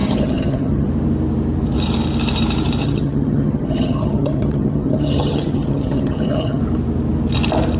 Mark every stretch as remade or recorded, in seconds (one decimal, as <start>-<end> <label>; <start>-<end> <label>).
0.0-0.9 remade; 0.9-2.8 recorded; 2.8-6.6 remade; 6.6-7.8 recorded